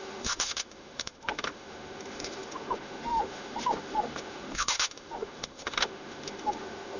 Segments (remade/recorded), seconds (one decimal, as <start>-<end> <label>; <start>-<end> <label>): 0.0-7.0 remade